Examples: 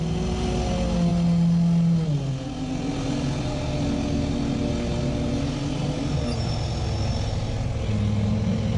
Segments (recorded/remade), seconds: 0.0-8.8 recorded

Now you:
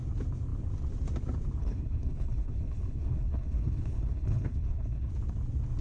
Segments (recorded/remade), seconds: 0.0-1.6 recorded; 1.6-5.1 remade; 5.1-5.8 recorded